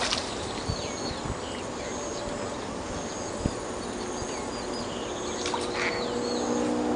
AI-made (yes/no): no